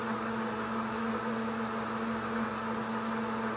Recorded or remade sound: recorded